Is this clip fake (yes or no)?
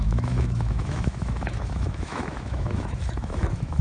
yes